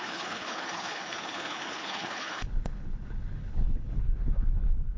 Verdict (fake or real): fake